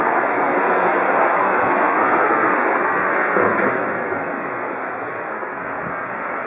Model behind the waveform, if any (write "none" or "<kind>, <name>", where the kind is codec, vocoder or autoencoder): codec, SNAC